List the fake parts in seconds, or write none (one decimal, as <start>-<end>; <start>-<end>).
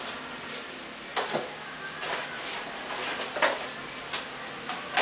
none